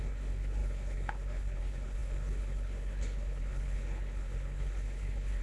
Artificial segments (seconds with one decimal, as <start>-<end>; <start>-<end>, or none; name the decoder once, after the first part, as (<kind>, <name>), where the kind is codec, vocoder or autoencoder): 0.0-5.4 (codec, HILCodec)